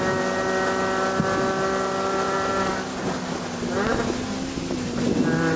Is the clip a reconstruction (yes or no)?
no